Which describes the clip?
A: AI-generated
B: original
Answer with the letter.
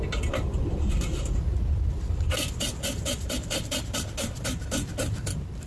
B